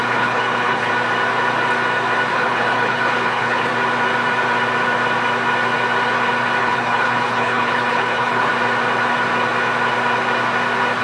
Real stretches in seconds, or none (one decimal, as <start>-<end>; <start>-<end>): 0.9-2.3; 3.7-6.6; 8.5-11.0